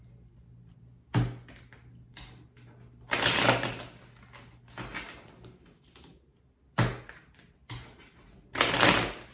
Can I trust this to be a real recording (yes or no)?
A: yes